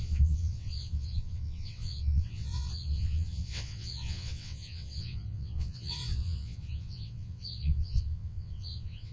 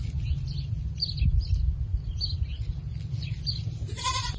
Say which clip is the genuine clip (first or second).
second